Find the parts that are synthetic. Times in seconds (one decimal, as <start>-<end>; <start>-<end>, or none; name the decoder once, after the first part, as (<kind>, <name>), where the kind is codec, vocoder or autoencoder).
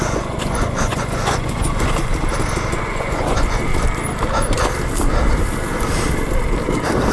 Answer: 0.0-2.1 (vocoder, Vocos); 2.8-3.7